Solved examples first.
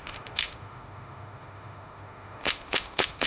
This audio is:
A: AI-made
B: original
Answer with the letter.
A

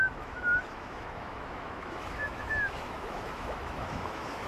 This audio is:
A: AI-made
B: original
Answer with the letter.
A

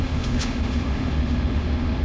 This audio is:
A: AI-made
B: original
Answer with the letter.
A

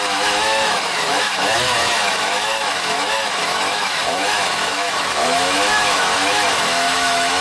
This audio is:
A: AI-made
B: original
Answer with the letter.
A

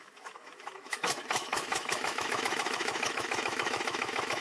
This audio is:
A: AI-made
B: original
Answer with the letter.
A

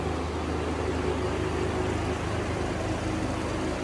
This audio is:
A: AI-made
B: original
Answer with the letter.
B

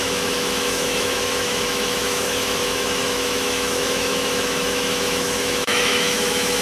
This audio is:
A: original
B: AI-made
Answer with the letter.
B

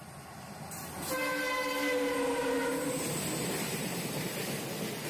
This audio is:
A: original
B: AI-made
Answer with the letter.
A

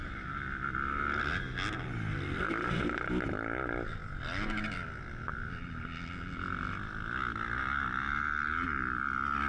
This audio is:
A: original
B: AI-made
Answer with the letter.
A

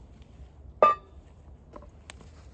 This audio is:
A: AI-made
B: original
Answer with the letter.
B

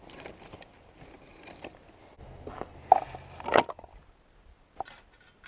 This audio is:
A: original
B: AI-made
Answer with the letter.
A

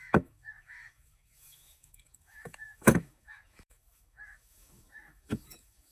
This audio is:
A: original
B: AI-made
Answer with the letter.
B